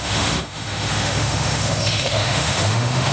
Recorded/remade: remade